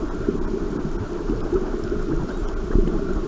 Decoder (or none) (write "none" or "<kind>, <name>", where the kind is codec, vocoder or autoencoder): none